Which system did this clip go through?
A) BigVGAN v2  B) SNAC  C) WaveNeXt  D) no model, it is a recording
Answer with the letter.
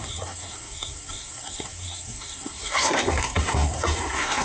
B